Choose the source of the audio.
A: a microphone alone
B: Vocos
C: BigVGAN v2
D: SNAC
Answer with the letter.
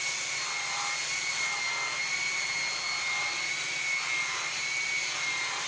A